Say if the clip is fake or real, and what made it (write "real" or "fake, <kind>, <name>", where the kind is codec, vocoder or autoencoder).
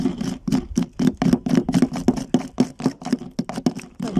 real